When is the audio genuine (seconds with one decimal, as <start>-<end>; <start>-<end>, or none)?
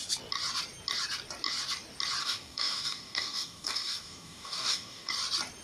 0.0-2.2; 5.1-5.6